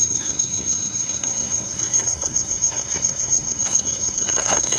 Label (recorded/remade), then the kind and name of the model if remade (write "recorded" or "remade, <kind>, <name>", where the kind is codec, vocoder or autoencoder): remade, codec, SNAC